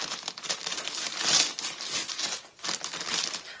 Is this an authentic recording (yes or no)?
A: yes